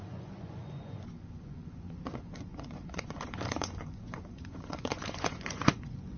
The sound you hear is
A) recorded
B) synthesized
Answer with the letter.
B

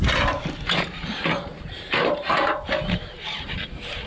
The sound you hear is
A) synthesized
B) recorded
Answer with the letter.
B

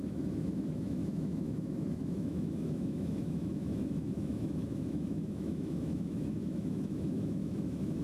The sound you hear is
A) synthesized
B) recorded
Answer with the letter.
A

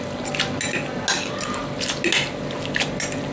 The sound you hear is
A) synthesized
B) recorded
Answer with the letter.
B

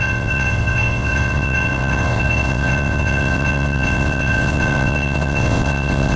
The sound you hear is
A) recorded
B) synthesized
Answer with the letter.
B